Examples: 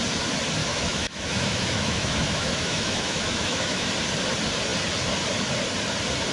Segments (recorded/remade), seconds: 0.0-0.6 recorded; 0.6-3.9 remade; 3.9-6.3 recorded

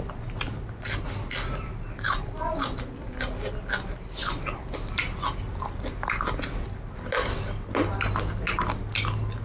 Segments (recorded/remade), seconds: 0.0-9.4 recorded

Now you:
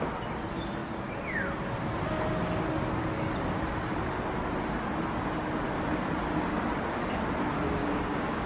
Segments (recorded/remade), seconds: 0.0-7.8 recorded; 7.8-8.5 remade

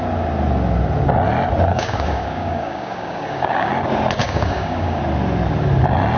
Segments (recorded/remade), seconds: 0.0-1.7 recorded; 1.7-3.7 remade; 3.7-4.2 recorded; 4.2-5.0 remade; 5.0-6.2 recorded

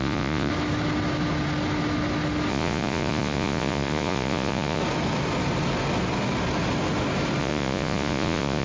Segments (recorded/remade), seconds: 0.0-0.5 remade; 0.5-2.5 recorded; 2.5-4.8 remade; 4.8-7.4 recorded; 7.4-8.6 remade

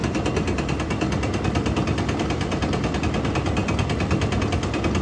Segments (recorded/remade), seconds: 0.0-3.0 remade; 3.0-5.0 recorded

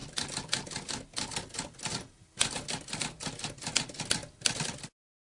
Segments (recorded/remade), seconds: 0.0-5.3 recorded

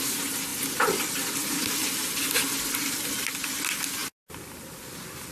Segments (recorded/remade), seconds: 0.0-5.3 recorded